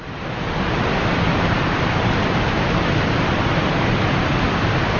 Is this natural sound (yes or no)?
yes